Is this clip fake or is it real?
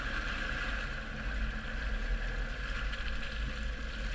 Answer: real